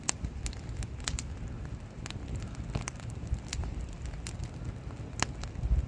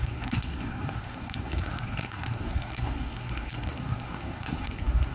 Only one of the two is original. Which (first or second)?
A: first